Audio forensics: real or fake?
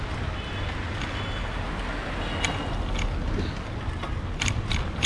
real